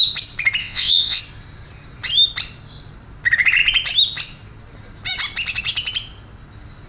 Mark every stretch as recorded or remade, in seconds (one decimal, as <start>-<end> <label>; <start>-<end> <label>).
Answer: 0.0-0.6 recorded; 0.6-1.2 remade; 1.2-6.9 recorded